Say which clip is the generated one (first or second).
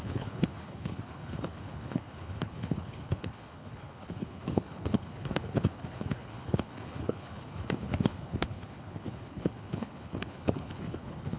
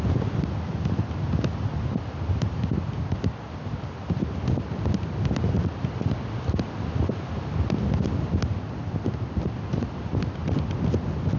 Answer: first